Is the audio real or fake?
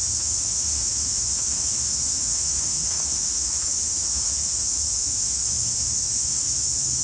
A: fake